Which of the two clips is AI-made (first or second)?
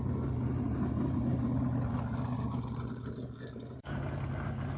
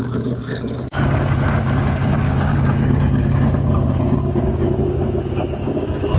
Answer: second